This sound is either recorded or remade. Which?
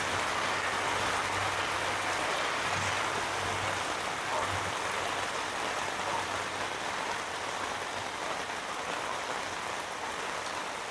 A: recorded